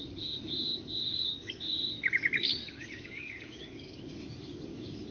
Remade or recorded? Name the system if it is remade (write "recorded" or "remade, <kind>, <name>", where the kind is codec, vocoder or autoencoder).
remade, codec, DAC